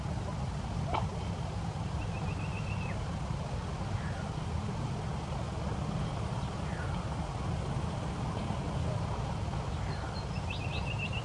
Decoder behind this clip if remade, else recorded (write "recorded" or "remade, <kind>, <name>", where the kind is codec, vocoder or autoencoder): recorded